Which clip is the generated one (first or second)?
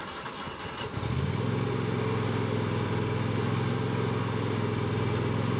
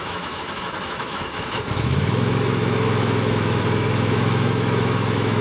second